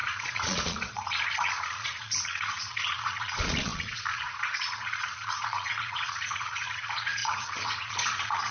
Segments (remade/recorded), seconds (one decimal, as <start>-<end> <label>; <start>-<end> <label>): 0.0-8.5 remade